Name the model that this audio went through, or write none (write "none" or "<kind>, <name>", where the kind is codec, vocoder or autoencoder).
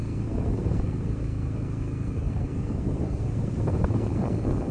codec, SNAC